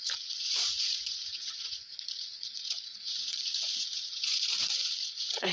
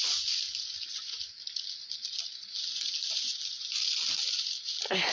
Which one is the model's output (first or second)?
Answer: first